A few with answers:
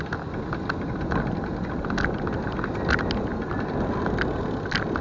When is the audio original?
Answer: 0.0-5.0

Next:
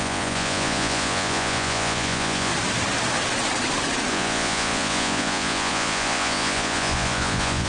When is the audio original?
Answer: 2.5-4.1

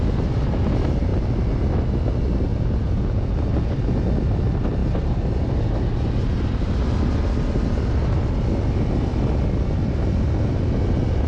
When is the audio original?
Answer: 0.0-2.5; 3.3-11.3

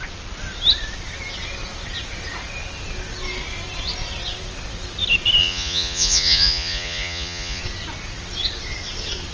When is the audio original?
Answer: 0.0-5.4; 7.6-9.3

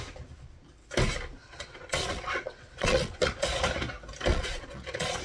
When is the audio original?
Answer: 0.0-1.4; 3.6-4.3